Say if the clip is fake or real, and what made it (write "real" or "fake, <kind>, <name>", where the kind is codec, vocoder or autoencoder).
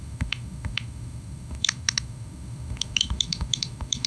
fake, autoencoder, DAC-VAE